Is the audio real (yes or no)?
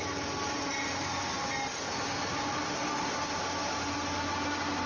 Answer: yes